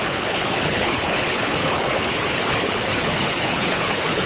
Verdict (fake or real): fake